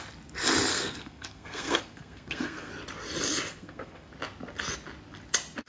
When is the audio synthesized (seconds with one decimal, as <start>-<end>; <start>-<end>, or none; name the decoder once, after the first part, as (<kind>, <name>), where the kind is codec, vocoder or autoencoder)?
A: 0.7-2.7 (codec, SNAC); 3.5-4.1